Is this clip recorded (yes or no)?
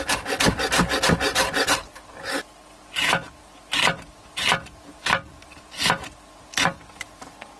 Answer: yes